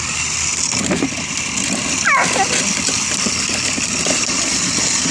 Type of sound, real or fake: real